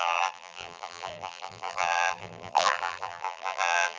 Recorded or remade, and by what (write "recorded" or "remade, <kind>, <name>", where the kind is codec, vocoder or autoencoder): remade, vocoder, BigVGAN v2